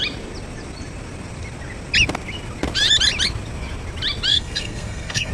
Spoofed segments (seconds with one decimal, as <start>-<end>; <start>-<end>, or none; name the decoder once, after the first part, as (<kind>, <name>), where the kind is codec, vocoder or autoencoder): 4.3-5.3 (codec, SNAC)